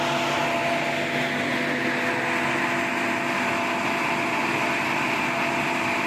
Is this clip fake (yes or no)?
no